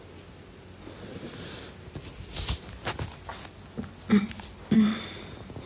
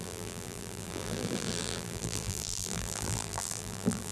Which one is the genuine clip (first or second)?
first